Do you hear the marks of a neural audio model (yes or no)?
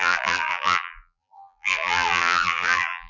yes